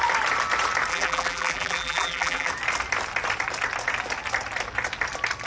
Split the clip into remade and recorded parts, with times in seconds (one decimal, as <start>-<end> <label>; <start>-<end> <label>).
0.0-0.9 recorded; 0.9-2.5 remade; 2.5-5.5 recorded